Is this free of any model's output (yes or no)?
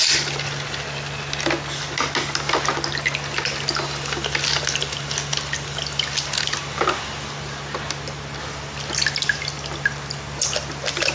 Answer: yes